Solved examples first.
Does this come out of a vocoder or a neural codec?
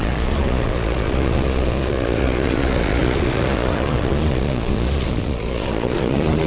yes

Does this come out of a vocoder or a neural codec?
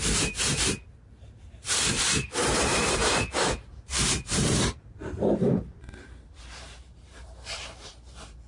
yes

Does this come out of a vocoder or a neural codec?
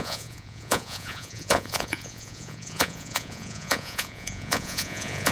yes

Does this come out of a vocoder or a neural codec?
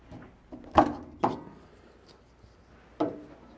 no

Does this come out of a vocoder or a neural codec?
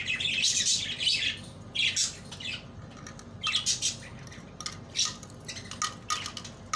no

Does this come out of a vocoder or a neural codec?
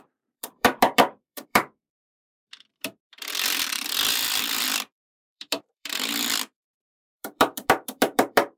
yes